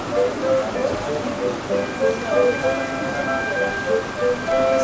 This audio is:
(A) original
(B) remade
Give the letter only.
A